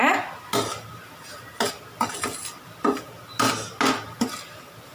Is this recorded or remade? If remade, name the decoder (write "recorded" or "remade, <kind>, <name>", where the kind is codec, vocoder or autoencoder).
recorded